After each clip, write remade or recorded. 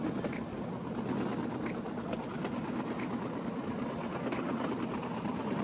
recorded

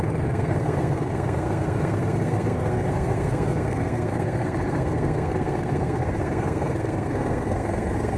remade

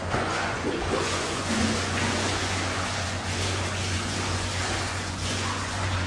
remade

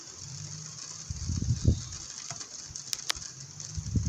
recorded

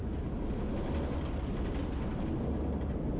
recorded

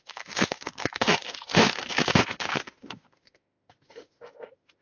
remade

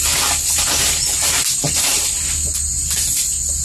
recorded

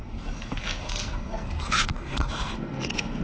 remade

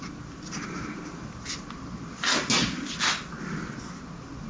recorded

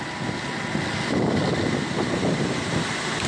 recorded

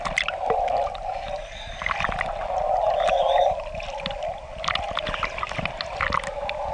recorded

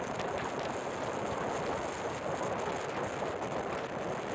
recorded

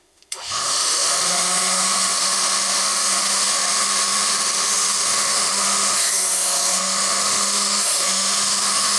remade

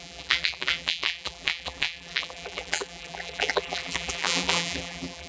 remade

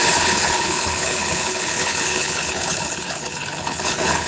remade